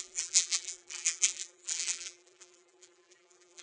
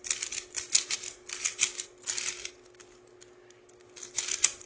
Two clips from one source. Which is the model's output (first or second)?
first